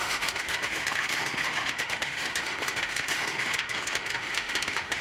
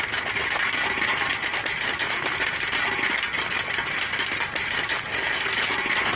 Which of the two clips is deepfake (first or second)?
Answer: first